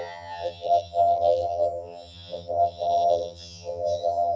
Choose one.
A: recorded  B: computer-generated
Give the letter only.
B